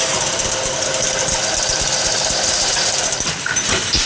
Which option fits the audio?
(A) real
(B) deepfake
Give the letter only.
A